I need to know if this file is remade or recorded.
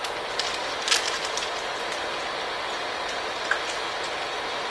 recorded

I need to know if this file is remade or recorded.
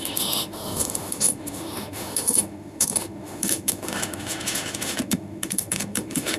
remade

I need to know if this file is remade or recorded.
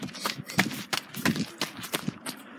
recorded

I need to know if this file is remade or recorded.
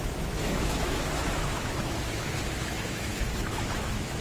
remade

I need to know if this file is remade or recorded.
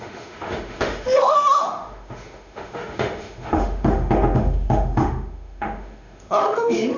remade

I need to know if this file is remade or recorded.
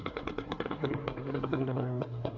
remade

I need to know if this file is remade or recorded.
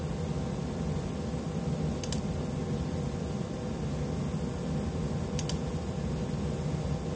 recorded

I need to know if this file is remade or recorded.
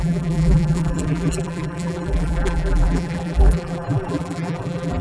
remade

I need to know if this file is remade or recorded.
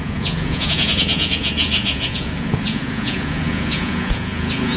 remade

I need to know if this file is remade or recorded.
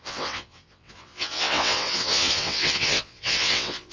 remade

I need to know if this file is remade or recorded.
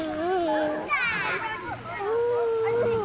recorded